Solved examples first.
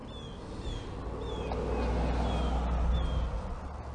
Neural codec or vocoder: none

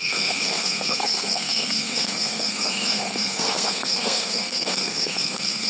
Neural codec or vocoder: codec, SNAC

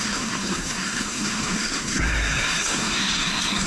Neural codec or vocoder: codec, SNAC